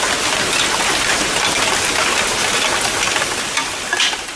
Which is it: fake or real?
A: real